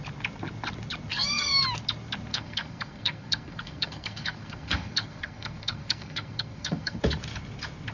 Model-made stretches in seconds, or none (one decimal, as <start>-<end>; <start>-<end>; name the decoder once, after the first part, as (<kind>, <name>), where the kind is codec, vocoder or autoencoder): 1.1-1.6 (codec, SNAC); 2.3-7.0